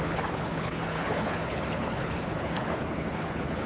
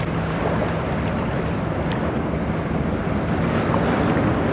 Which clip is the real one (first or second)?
second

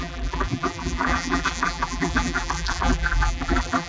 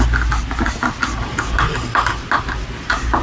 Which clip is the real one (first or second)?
second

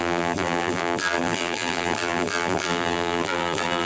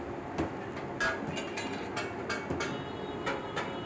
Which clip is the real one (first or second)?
second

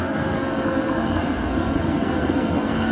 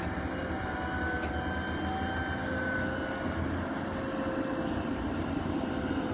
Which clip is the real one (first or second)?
second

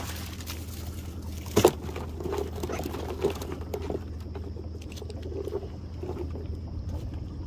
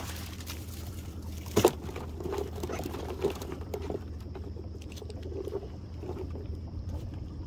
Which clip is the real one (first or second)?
first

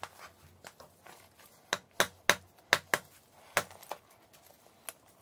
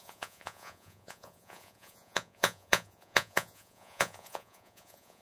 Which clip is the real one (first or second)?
first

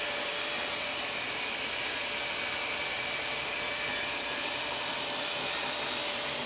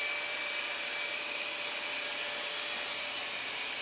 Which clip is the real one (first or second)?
second